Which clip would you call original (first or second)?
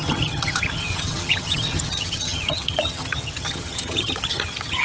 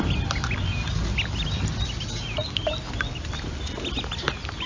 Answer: second